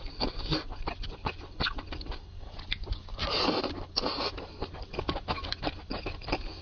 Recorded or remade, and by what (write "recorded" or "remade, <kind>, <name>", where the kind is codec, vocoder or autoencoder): recorded